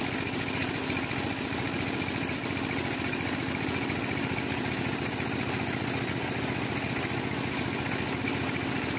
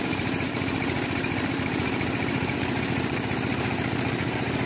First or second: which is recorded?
first